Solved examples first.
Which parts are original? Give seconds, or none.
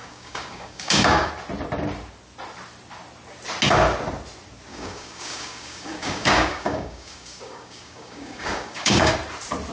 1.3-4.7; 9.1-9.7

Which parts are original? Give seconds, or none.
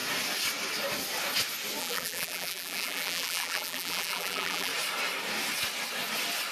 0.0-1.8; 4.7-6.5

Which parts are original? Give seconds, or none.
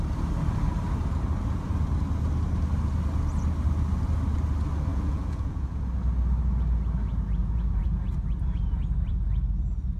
0.0-4.9; 5.8-7.4; 8.0-10.0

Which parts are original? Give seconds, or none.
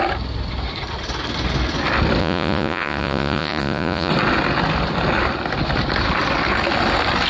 0.0-2.2; 4.1-7.3